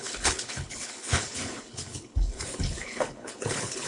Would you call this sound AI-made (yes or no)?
yes